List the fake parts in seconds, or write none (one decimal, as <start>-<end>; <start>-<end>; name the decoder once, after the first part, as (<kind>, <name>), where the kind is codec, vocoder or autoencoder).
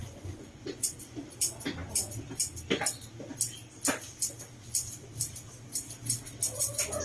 0.0-1.2 (vocoder, Vocos)